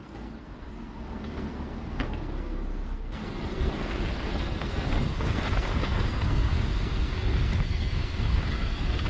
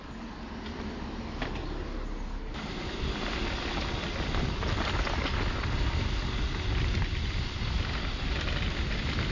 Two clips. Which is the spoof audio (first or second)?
first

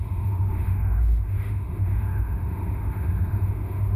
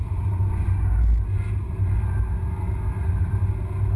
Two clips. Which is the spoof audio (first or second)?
first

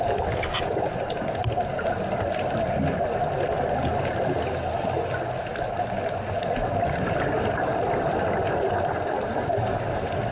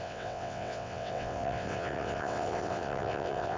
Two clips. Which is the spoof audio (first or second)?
second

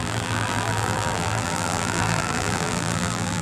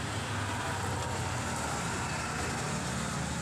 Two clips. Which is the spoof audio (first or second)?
first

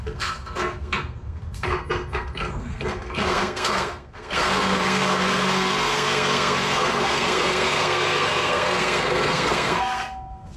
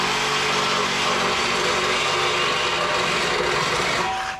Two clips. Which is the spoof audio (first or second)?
first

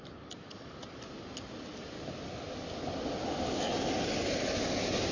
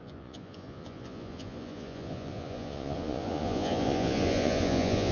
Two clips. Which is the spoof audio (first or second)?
second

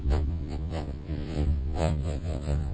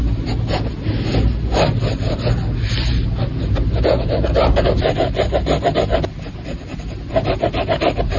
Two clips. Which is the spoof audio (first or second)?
first